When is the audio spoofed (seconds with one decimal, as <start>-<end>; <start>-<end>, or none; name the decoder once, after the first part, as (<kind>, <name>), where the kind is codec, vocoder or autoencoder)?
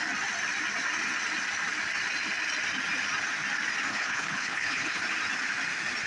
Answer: 3.9-5.0 (codec, HILCodec)